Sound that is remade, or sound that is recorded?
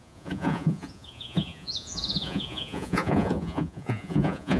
remade